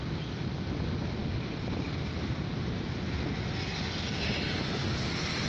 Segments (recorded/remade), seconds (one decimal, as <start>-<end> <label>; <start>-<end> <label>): 0.0-5.5 recorded